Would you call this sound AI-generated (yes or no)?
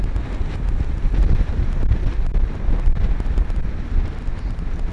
no